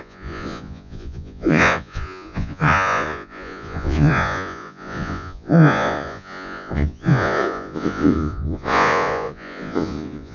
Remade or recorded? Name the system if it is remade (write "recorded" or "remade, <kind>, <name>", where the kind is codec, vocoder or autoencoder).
remade, vocoder, Vocos